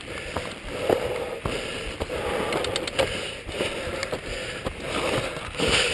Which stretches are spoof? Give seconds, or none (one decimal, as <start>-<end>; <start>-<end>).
0.0-4.0